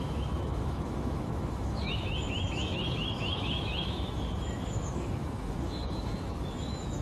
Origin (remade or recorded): remade